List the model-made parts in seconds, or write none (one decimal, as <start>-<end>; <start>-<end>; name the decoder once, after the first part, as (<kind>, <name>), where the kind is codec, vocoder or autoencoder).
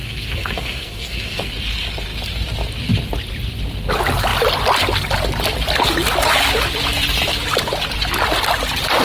0.0-1.5 (codec, SNAC)